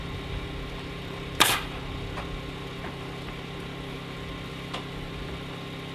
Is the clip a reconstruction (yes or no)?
no